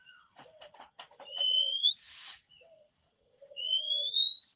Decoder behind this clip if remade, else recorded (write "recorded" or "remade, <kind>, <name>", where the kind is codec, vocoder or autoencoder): remade, vocoder, Vocos